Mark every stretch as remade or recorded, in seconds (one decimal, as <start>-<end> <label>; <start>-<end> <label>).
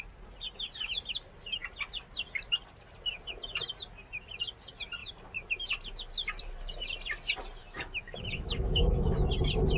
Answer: 0.0-7.6 recorded; 7.6-9.3 remade; 9.3-9.8 recorded